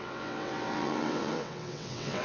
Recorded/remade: remade